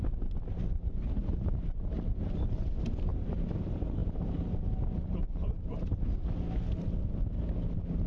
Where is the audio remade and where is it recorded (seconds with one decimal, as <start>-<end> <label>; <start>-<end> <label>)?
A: 0.0-8.1 recorded